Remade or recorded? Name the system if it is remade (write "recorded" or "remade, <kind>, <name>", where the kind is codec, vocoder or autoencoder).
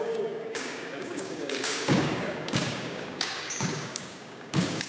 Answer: remade, codec, DAC